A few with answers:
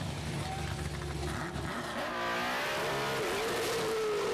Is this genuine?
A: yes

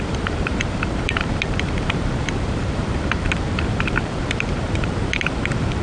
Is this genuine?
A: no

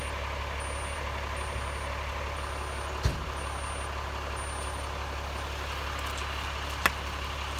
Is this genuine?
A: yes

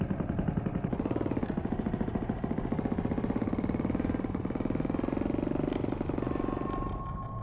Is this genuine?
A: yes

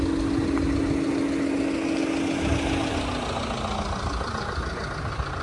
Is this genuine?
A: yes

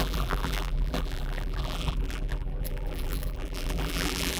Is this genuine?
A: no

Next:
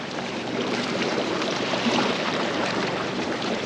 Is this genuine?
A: no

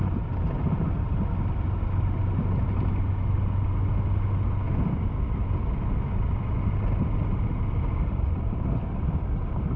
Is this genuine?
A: yes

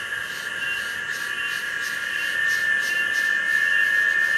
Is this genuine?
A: yes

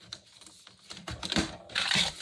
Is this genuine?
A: no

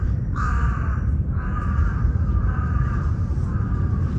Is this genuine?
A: no